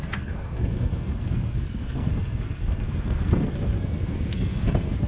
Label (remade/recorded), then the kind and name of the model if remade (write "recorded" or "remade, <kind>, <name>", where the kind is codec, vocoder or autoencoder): remade, codec, SNAC